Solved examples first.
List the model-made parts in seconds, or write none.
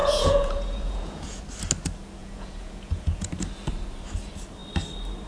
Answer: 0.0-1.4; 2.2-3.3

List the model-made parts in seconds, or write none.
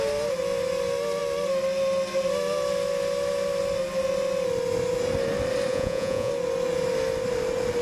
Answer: 5.7-6.3